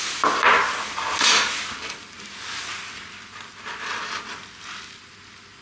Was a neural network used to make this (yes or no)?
no